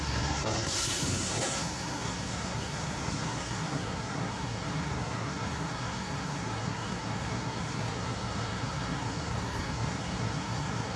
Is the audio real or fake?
fake